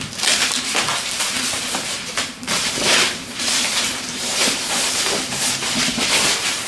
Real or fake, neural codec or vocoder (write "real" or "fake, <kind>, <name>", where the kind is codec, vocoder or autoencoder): fake, vocoder, BigVGAN v2